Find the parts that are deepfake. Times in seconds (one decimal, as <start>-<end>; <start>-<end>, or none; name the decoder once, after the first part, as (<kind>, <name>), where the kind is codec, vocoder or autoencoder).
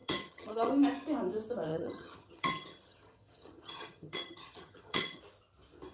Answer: 0.0-0.7 (vocoder, HiFi-GAN); 1.7-5.2